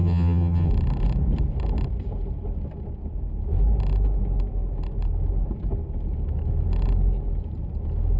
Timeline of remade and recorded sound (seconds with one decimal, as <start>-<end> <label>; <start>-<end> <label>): 0.0-0.7 remade; 0.7-8.2 recorded